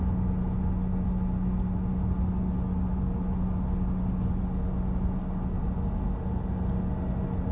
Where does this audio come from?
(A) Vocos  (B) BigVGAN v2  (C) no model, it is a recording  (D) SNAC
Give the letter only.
C